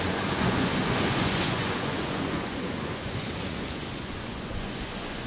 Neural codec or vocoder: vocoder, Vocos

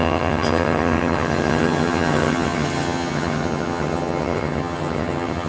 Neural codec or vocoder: vocoder, HiFi-GAN